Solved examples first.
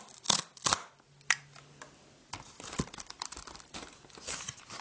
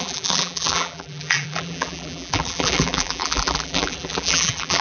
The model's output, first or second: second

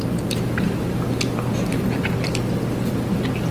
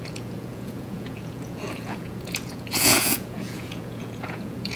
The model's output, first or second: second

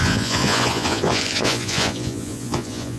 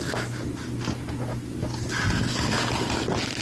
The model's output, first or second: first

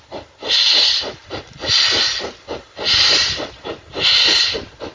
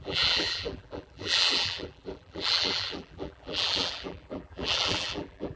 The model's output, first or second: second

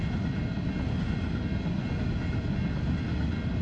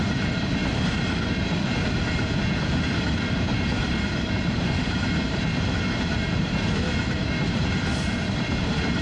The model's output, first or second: second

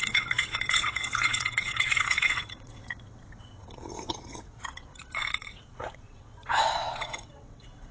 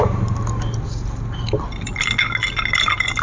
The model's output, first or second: first